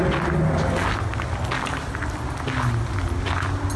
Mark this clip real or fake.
real